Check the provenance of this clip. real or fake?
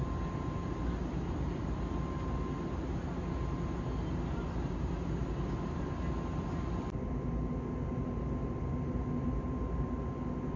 real